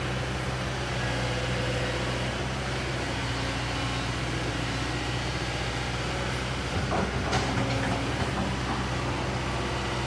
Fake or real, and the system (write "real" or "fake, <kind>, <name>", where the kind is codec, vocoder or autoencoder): real